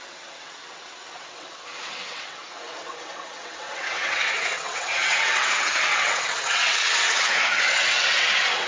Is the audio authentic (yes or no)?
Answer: no